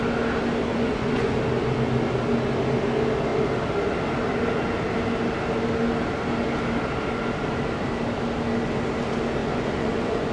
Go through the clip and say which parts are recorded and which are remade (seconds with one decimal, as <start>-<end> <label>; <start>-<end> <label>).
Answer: 0.0-0.7 recorded; 0.7-1.4 remade; 1.4-9.4 recorded; 9.4-10.3 remade